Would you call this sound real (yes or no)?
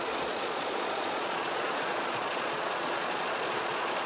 no